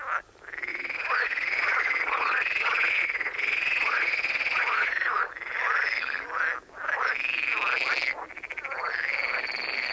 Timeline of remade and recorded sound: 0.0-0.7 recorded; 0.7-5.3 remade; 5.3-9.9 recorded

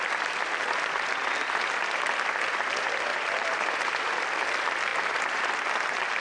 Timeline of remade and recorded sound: 0.0-3.1 recorded; 3.1-4.1 remade; 4.1-4.9 recorded; 4.9-5.5 remade; 5.5-6.2 recorded

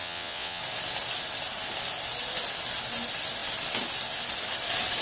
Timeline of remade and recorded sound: 0.0-0.6 remade; 0.6-5.0 recorded